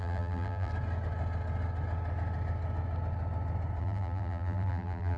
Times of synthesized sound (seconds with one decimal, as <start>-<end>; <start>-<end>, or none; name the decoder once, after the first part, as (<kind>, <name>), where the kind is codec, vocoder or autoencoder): 0.0-0.7 (vocoder, BigVGAN v2); 3.8-5.2